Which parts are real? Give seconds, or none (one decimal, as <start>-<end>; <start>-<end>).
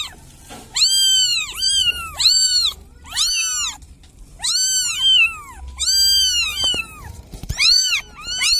0.0-1.3; 3.0-6.5; 8.0-8.6